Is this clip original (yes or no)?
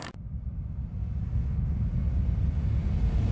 yes